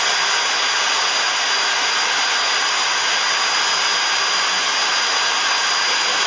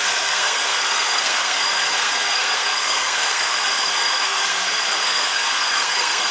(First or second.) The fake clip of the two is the second